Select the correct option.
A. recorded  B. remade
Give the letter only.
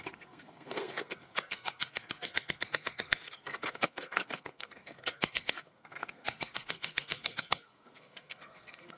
B